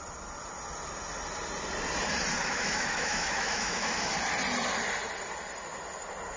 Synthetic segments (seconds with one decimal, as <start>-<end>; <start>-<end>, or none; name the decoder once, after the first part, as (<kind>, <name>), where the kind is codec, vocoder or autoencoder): 2.4-4.1 (autoencoder, DAC-VAE)

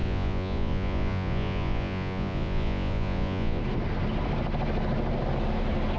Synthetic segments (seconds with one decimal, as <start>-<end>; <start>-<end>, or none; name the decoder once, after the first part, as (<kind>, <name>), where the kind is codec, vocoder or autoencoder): 0.0-3.6 (vocoder, Vocos)

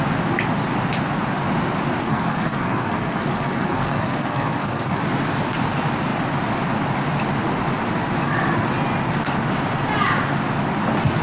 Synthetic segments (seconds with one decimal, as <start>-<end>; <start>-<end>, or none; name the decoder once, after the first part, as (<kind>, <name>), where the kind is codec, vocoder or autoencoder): 2.0-5.0 (codec, SNAC)